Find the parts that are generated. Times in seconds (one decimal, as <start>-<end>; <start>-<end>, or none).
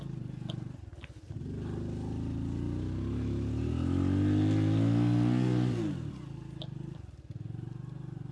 none